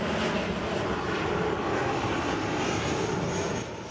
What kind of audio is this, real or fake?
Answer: real